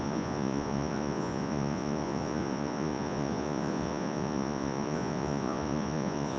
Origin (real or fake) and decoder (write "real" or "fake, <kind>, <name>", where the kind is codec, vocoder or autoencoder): fake, vocoder, Vocos